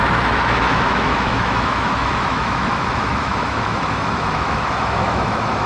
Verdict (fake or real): fake